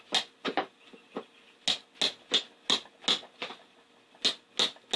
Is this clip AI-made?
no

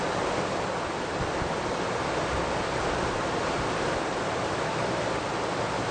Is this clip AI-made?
no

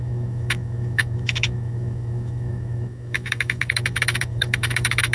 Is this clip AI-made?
yes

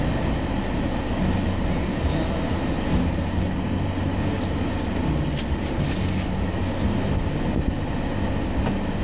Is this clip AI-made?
no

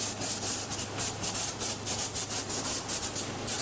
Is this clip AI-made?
no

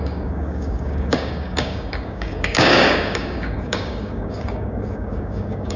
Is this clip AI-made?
yes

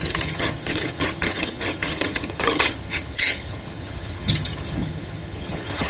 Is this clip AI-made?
yes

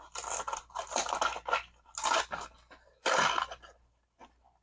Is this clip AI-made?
no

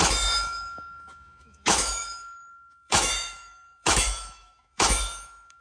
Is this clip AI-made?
yes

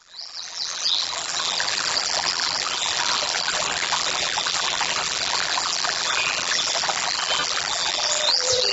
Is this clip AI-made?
yes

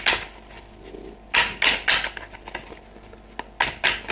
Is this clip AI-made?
no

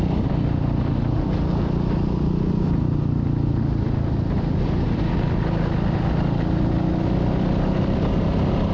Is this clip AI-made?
no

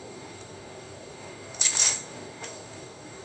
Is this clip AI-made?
yes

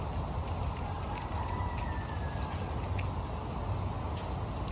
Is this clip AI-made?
no